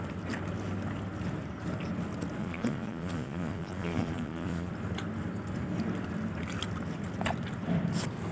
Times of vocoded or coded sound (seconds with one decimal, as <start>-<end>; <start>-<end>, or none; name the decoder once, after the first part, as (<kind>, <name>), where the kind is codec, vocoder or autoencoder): 2.4-4.7 (vocoder, Vocos)